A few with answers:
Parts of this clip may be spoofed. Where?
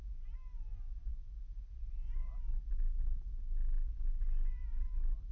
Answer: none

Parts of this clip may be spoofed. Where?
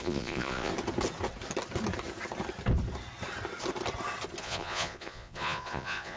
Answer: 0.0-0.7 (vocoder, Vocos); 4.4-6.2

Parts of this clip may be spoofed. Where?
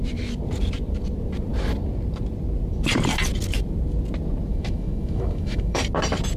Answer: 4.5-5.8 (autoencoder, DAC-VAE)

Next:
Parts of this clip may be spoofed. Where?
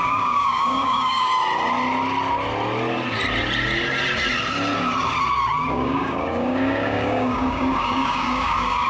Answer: 0.0-1.3 (codec, DAC); 5.7-8.9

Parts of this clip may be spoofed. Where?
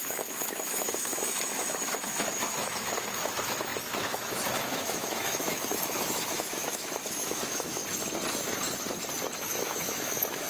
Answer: 0.0-7.8 (autoencoder, DAC-VAE); 9.4-10.5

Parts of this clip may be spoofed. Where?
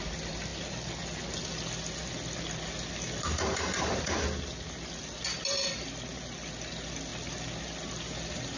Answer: none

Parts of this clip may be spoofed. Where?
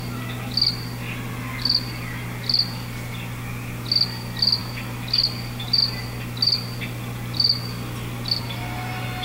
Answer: none